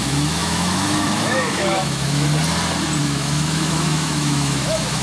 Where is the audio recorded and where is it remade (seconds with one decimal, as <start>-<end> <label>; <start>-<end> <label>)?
0.0-2.3 remade; 2.3-3.0 recorded; 3.0-5.0 remade